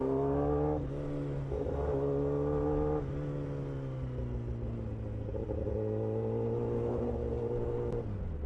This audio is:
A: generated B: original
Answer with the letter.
B